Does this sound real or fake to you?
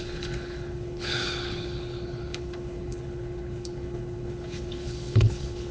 fake